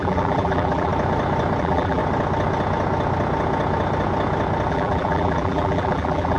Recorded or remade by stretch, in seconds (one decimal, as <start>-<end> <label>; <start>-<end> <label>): 0.0-0.9 remade; 0.9-1.6 recorded; 1.6-2.0 remade; 2.0-4.7 recorded; 4.7-6.4 remade

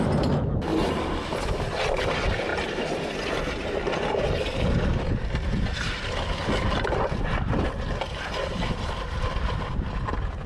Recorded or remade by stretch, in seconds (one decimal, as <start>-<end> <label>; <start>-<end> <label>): 0.0-10.5 recorded